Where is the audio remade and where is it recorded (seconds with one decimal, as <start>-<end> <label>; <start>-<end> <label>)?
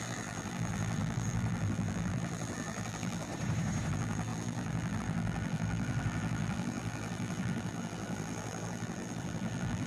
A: 0.0-3.3 remade; 3.3-3.9 recorded; 3.9-9.9 remade